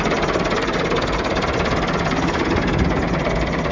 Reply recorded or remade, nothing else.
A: recorded